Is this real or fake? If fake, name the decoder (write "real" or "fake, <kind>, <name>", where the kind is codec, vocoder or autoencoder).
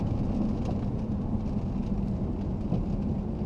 real